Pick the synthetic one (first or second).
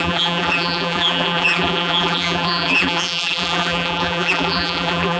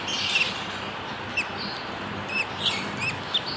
first